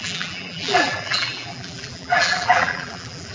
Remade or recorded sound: remade